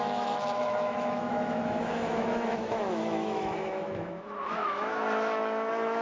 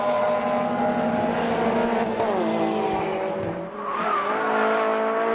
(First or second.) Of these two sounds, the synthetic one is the first